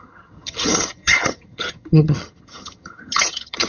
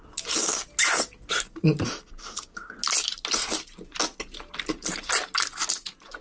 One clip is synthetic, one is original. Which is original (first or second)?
second